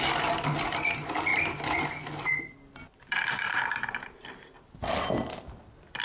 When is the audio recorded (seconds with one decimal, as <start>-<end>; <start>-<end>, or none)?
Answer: 0.0-6.0